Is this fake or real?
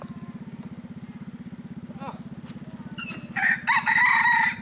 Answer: real